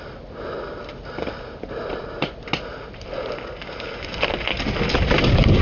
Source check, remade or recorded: recorded